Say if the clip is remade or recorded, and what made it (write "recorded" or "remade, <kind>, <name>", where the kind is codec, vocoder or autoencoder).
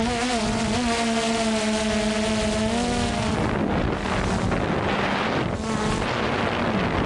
recorded